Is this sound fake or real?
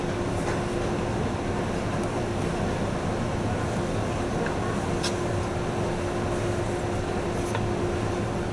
real